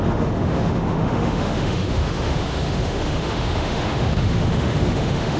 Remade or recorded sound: remade